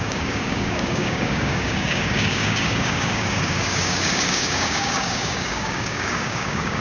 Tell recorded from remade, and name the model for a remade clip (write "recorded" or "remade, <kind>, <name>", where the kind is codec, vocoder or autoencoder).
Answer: remade, codec, DAC